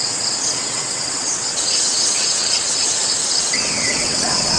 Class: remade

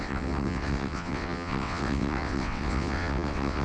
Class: remade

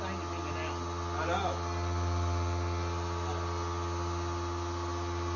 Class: recorded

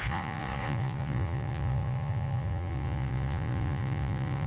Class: remade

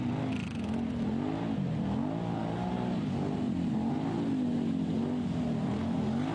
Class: recorded